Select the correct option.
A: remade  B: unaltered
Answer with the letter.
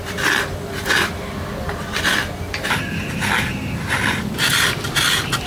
B